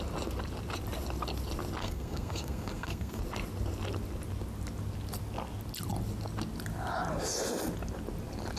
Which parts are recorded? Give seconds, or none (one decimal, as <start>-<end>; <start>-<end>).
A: 0.0-1.8; 3.2-8.6